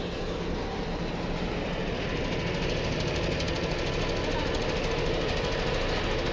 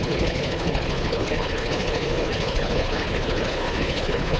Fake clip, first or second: second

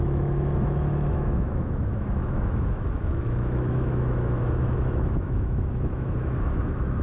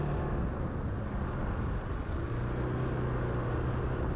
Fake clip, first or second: first